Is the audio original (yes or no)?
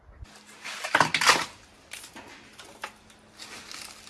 yes